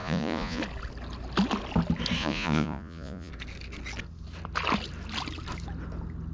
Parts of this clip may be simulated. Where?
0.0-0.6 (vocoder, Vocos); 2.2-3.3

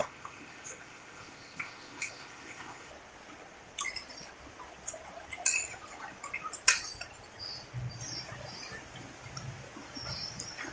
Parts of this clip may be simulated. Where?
0.0-2.9 (codec, ZipCodec)